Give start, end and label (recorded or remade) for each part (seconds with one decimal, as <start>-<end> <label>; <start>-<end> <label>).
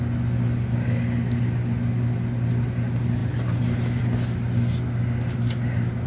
0.0-6.1 recorded